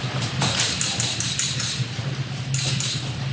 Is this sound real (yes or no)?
yes